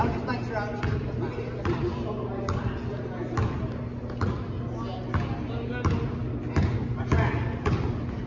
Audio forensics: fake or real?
real